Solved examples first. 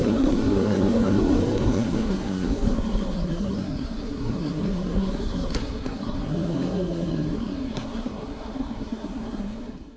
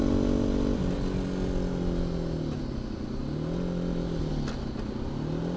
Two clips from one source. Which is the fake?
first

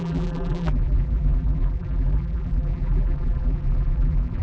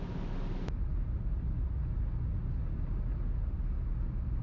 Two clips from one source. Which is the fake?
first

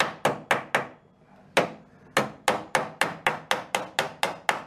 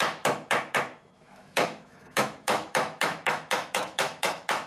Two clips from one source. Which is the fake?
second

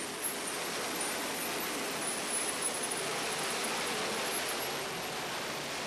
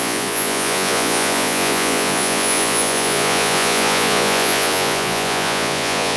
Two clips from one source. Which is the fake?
second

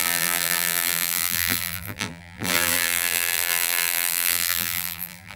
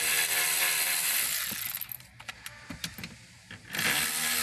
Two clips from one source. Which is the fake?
first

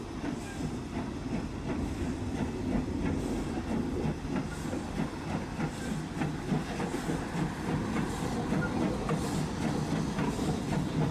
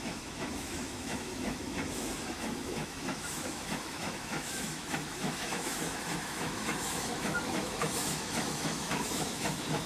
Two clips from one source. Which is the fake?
second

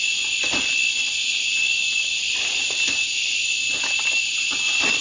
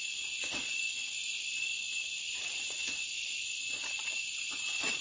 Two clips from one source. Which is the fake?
second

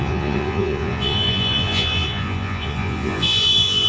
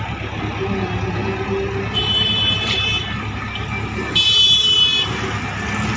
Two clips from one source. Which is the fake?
first